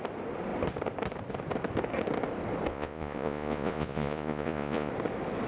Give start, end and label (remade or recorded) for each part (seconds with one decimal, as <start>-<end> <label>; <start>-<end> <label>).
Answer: 0.0-2.7 recorded; 2.7-4.9 remade; 4.9-5.5 recorded